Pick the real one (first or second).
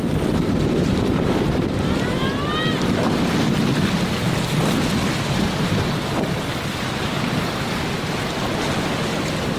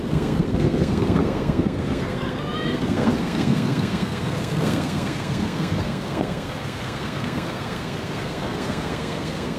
first